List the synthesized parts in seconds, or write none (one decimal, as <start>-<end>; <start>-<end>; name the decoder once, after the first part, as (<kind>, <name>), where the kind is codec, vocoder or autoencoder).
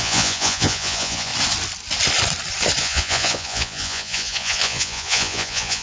0.0-1.3 (vocoder, Vocos); 2.8-5.8